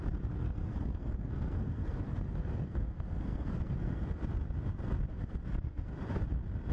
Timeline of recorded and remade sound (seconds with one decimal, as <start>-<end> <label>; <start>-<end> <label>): 0.0-0.4 recorded; 0.4-4.0 remade; 4.0-5.1 recorded; 5.1-5.9 remade; 5.9-6.7 recorded